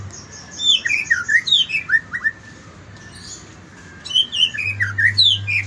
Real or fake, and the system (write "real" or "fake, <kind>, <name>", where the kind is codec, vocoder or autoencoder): real